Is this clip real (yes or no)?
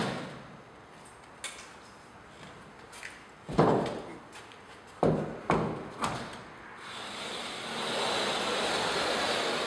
yes